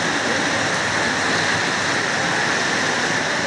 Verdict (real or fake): real